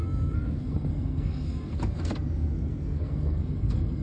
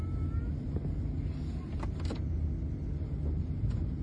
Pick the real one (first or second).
second